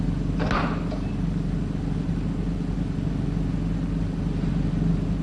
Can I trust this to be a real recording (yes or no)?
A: yes